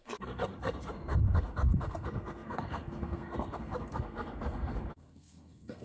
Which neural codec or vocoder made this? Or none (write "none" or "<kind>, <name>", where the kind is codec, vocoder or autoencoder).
codec, SNAC